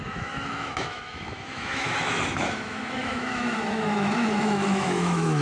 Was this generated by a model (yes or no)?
yes